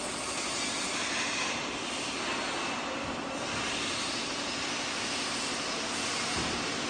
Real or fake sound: real